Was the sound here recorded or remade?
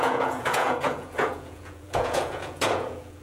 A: remade